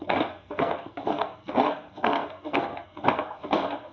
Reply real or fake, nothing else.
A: fake